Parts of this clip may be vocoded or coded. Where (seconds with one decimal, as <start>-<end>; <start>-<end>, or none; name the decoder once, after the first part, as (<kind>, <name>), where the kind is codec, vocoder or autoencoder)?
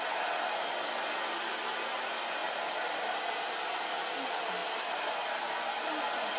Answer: none